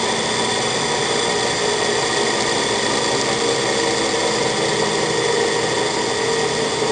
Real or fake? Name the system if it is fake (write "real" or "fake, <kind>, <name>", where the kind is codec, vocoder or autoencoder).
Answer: real